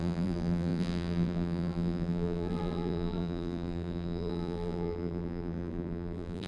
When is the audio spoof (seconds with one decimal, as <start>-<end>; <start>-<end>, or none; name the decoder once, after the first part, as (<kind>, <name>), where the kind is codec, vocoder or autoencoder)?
0.0-6.5 (vocoder, BigVGAN v2)